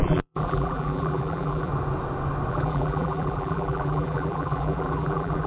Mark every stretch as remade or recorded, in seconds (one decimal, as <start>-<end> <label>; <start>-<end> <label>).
0.0-1.7 remade; 1.7-2.5 recorded; 2.5-5.5 remade